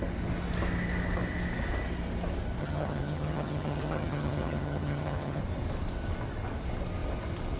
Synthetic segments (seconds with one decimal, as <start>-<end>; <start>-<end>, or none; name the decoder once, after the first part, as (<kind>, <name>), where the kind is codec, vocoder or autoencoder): 2.6-5.4 (vocoder, HiFi-GAN)